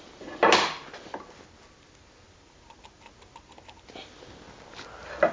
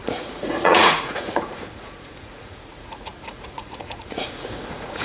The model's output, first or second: second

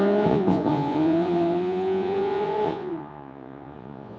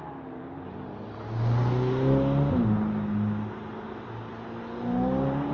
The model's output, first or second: first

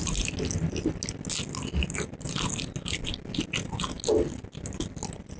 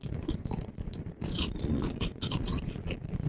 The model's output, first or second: second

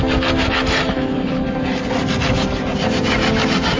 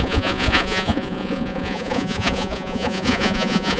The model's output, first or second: second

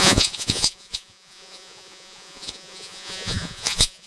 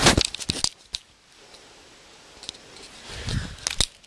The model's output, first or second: first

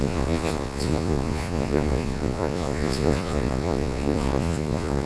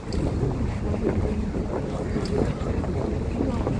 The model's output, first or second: first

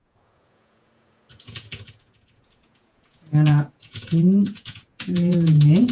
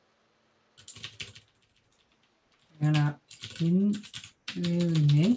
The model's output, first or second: first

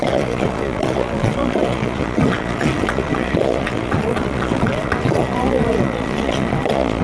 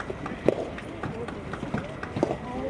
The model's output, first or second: first